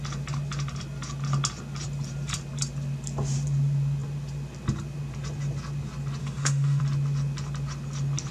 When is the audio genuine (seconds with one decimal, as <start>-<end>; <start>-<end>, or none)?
0.0-6.2; 6.8-8.3